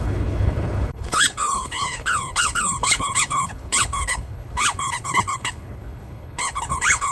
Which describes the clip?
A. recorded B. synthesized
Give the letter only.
B